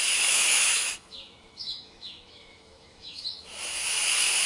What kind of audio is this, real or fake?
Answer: fake